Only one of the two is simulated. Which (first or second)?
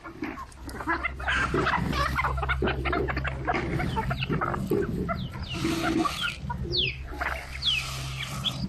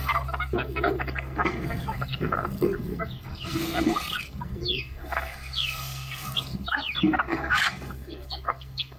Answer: second